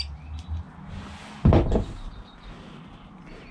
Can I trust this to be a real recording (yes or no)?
yes